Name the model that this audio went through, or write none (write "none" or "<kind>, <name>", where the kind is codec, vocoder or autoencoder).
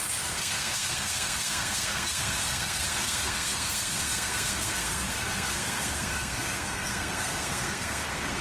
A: codec, SNAC